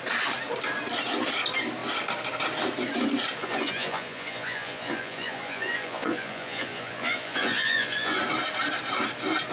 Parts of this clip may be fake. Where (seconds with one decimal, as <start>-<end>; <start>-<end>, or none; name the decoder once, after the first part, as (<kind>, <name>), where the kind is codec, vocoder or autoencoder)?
3.4-8.2 (vocoder, Vocos)